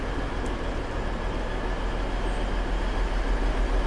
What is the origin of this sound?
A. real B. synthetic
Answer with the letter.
A